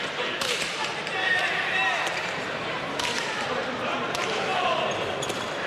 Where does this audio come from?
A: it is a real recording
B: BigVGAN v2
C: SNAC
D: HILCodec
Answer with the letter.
B